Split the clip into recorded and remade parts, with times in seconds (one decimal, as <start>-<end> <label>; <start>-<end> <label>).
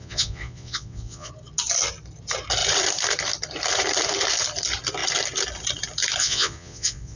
0.0-1.3 remade; 1.3-6.2 recorded; 6.2-7.2 remade